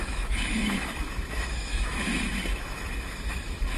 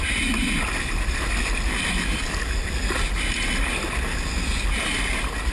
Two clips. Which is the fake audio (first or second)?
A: first